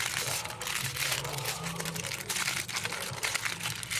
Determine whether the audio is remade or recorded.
recorded